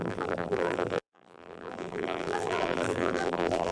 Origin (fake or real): fake